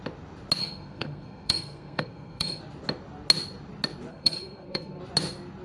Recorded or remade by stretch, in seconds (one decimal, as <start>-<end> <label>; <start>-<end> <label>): 0.0-0.6 recorded; 0.6-2.6 remade; 2.6-4.1 recorded; 4.1-5.0 remade; 5.0-5.6 recorded